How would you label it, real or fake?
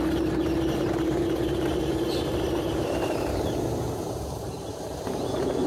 fake